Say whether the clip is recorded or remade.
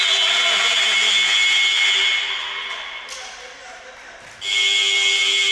recorded